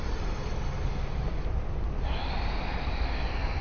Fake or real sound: real